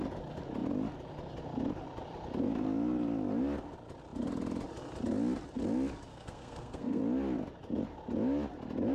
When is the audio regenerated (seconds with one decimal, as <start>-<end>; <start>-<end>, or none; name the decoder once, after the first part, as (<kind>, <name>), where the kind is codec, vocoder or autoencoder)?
6.1-7.0 (codec, SNAC)